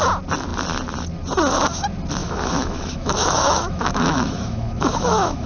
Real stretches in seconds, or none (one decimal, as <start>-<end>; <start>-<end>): 0.0-2.2